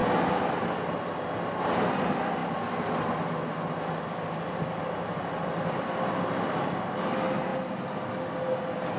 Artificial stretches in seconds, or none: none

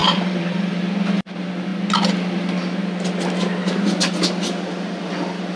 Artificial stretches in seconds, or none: 0.0-0.8 (vocoder, BigVGAN v2)